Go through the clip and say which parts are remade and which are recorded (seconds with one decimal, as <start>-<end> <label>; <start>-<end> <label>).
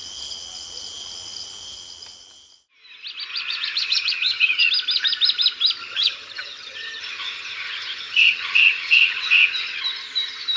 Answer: 0.0-3.3 recorded; 3.3-4.6 remade; 4.6-5.8 recorded; 5.8-9.8 remade; 9.8-10.6 recorded